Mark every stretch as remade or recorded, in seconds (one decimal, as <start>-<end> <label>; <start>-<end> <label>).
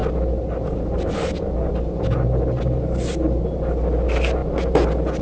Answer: 0.0-5.2 recorded